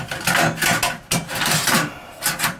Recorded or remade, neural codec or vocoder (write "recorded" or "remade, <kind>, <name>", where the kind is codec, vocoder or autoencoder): recorded